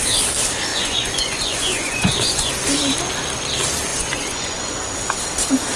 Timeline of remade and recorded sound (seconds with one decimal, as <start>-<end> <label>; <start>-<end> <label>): 0.0-0.7 recorded; 0.7-2.5 remade; 2.5-3.9 recorded; 3.9-4.9 remade; 4.9-5.8 recorded